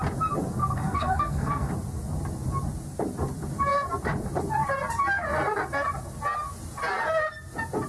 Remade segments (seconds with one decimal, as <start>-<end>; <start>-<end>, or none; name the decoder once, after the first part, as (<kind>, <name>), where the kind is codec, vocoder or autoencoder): 0.6-1.7 (codec, SNAC)